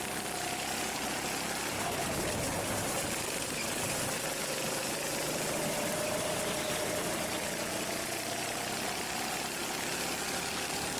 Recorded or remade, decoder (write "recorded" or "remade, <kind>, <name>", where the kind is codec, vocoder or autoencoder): recorded